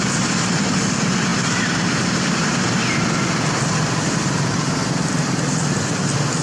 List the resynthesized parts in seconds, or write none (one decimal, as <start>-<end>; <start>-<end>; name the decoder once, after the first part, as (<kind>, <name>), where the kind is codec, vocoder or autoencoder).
1.3-2.6 (vocoder, BigVGAN v2)